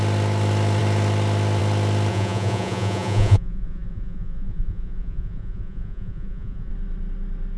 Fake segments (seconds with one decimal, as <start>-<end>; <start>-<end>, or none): 2.1-6.7